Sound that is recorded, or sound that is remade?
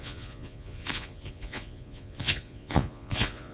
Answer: remade